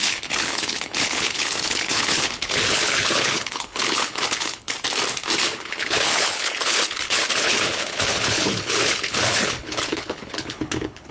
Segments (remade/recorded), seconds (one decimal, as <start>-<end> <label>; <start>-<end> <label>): 0.0-4.7 remade; 4.7-5.4 recorded; 5.4-11.1 remade